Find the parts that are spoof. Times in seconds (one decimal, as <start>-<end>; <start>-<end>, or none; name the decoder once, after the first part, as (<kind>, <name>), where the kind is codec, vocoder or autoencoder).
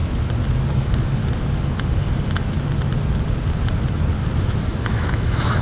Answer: 0.7-1.2 (autoencoder, DAC-VAE); 4.4-5.6